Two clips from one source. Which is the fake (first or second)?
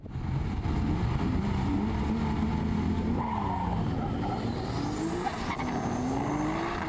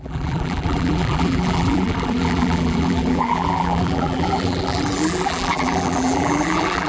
second